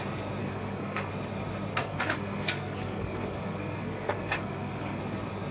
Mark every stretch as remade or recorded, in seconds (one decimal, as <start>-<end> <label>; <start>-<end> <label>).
0.0-0.4 recorded; 0.4-1.1 remade; 1.1-1.7 recorded; 1.7-5.0 remade; 5.0-5.5 recorded